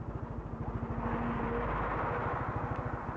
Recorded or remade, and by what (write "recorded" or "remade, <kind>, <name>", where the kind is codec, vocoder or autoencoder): recorded